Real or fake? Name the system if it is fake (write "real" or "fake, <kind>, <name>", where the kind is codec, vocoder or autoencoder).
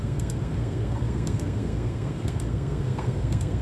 fake, codec, SNAC